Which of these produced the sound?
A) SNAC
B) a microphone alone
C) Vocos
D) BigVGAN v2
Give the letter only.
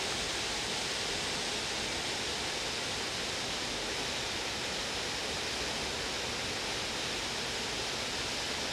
B